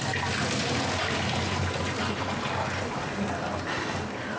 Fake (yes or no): no